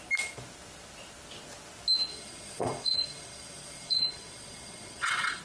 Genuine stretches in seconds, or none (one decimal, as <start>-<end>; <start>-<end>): 0.0-2.1